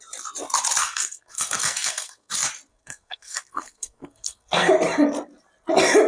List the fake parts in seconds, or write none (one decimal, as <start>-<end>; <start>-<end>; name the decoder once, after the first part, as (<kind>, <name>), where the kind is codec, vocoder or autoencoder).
0.8-2.3 (codec, SNAC); 2.7-4.7